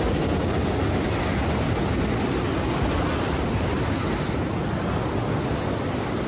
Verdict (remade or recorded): recorded